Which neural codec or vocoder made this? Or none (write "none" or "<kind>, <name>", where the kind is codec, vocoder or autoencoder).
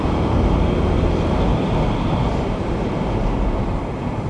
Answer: vocoder, BigVGAN v2